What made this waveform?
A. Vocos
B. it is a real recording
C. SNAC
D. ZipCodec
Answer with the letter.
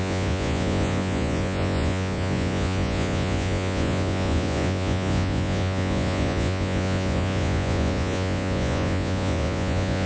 A